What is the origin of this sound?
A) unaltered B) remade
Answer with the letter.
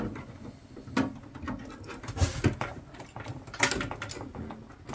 A